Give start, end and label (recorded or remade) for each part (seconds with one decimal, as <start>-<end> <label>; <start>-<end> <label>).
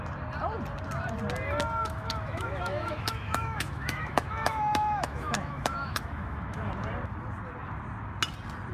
0.0-1.8 recorded; 1.8-6.7 remade; 6.7-8.7 recorded